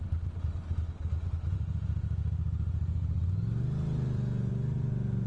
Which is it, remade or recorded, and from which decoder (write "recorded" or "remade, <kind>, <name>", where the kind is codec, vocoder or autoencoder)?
recorded